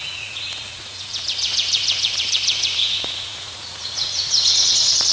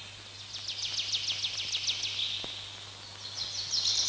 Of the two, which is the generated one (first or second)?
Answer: first